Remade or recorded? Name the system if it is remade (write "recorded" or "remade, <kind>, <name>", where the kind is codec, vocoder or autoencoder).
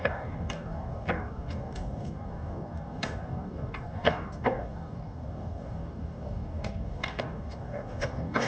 remade, codec, DAC